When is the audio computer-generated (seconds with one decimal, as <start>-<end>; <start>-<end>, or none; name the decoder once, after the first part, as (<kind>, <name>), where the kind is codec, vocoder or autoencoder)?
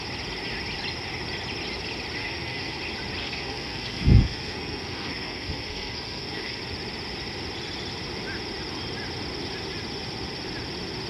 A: 2.2-2.8 (codec, SNAC); 3.2-6.6